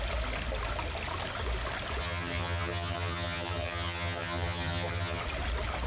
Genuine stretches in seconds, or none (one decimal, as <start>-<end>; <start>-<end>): 0.0-2.0; 5.2-5.9